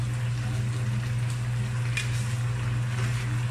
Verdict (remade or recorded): recorded